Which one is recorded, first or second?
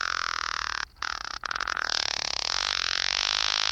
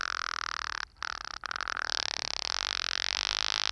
second